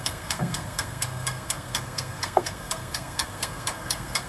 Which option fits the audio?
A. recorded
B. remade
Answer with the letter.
B